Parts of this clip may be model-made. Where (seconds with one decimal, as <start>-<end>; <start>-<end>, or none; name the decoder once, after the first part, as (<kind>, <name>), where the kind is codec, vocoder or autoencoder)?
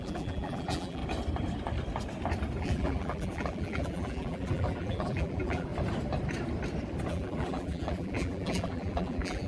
0.0-1.0 (vocoder, BigVGAN v2); 2.6-5.7; 7.1-9.5